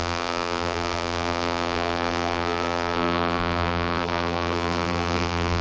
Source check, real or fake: fake